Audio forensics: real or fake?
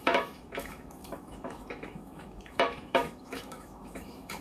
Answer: fake